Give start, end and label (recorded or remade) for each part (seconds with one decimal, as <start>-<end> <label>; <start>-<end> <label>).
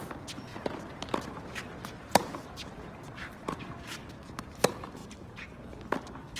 0.0-0.5 remade; 0.5-4.3 recorded; 4.3-6.4 remade